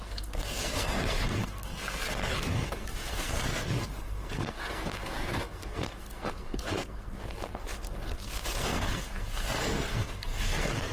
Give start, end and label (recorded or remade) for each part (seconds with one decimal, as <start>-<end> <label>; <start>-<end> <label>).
0.0-10.9 remade